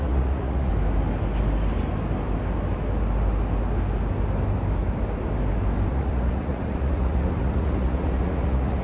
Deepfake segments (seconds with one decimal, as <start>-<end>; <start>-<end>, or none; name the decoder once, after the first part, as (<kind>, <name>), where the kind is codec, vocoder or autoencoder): 0.0-0.7 (vocoder, Vocos); 5.9-8.8

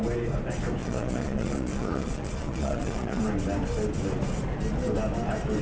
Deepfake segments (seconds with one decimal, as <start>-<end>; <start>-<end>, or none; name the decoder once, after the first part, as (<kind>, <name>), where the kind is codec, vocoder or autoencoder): 0.8-3.2 (vocoder, Vocos)